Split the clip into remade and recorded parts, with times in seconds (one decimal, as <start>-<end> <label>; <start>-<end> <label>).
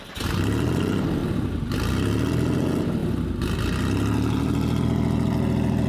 0.0-5.9 recorded